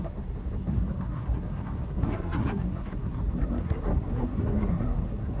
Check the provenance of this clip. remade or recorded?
remade